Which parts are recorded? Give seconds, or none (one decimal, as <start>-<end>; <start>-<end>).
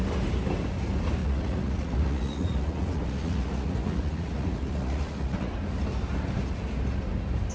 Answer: 0.0-1.2; 5.5-7.5